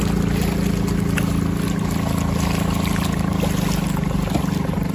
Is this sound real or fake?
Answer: real